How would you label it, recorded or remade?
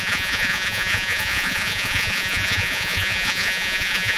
remade